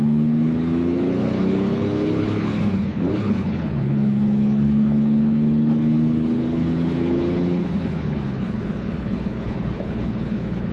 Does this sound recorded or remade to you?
remade